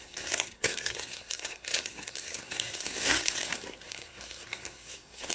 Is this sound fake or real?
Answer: fake